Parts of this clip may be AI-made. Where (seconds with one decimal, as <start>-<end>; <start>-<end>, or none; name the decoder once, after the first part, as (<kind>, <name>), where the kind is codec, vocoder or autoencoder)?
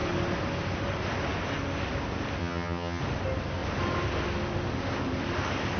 2.4-3.0 (vocoder, HiFi-GAN)